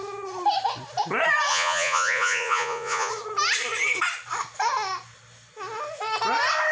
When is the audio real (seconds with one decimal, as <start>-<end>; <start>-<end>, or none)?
0.0-1.5; 3.1-6.7